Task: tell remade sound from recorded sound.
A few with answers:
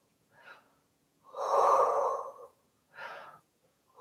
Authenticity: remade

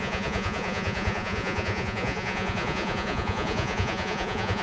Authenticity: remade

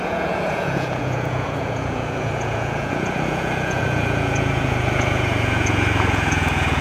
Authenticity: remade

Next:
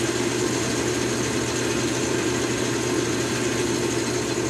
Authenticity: recorded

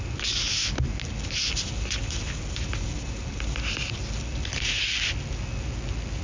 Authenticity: recorded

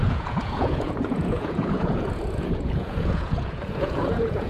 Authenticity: remade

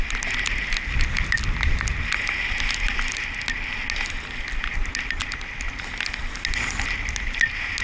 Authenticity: recorded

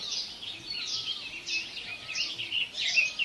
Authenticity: recorded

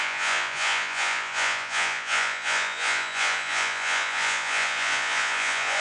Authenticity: remade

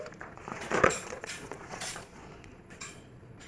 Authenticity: remade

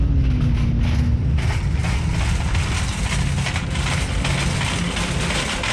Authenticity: recorded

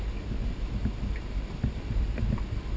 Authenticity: recorded